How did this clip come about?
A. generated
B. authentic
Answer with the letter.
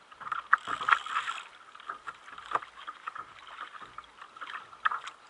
B